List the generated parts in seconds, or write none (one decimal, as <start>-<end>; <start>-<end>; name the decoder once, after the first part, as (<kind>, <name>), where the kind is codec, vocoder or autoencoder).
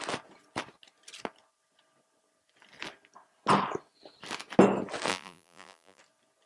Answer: 5.1-6.0 (vocoder, BigVGAN v2)